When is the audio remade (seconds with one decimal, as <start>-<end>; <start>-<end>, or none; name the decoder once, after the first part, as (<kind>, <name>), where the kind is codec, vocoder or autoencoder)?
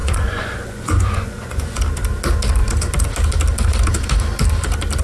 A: 0.0-1.8 (vocoder, Vocos)